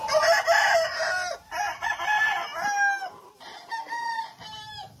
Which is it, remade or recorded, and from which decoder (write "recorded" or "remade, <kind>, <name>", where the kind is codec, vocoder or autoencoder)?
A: recorded